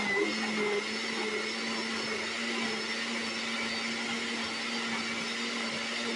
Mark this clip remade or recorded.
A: recorded